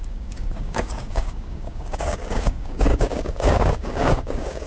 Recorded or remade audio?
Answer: remade